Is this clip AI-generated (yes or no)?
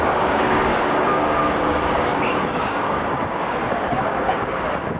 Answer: yes